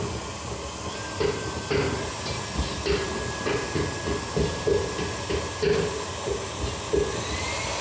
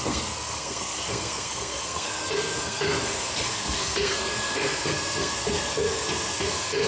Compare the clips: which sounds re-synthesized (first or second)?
second